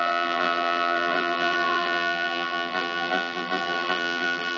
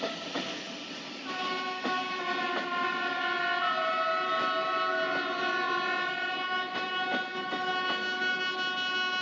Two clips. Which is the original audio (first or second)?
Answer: second